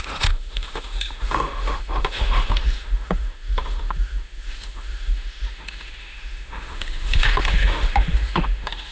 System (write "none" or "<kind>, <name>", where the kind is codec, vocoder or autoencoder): autoencoder, DAC-VAE